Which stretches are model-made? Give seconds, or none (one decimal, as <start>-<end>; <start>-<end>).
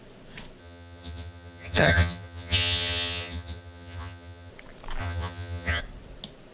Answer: 0.6-4.5; 5.0-5.8